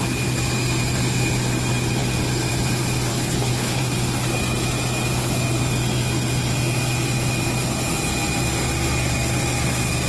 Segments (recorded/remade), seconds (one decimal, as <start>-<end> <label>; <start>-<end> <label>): 0.0-3.1 recorded; 3.1-3.8 remade; 3.8-10.1 recorded